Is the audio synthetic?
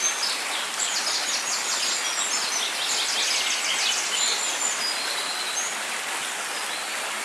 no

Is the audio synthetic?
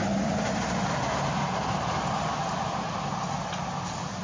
no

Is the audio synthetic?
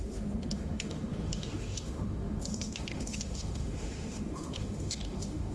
yes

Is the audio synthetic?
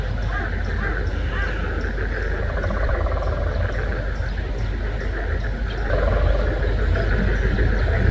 no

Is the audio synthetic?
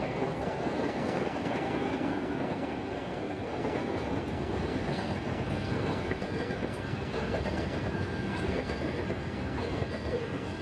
yes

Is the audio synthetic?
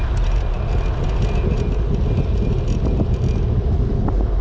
no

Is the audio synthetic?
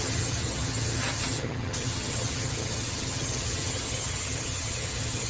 yes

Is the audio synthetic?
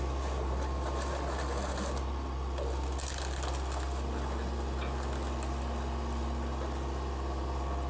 no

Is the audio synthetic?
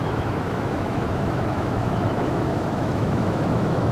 yes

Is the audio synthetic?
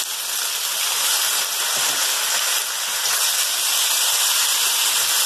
no